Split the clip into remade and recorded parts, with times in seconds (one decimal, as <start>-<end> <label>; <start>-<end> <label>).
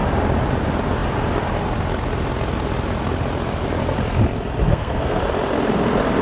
0.0-4.7 recorded; 4.7-5.2 remade; 5.2-6.2 recorded